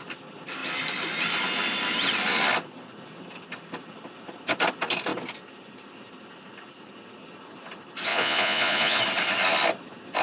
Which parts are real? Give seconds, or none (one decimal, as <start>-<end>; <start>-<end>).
0.0-8.1; 9.0-10.2